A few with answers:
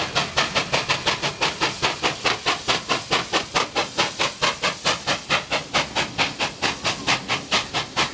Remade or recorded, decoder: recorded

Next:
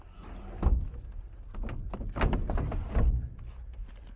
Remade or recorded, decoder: recorded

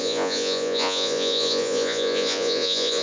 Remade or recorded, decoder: remade, vocoder, Vocos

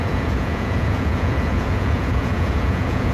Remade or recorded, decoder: remade, vocoder, Vocos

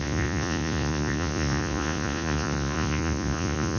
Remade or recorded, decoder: remade, vocoder, Vocos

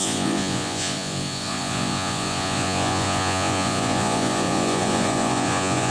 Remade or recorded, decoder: remade, vocoder, Vocos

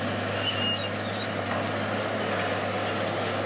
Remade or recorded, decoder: recorded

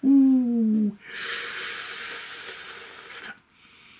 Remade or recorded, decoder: recorded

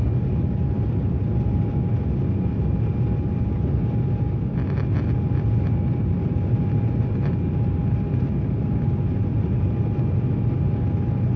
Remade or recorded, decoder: recorded